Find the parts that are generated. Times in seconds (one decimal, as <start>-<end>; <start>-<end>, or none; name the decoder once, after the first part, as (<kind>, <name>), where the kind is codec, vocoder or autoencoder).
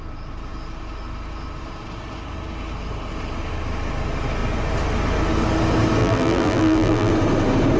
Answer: 6.0-7.1 (vocoder, BigVGAN v2)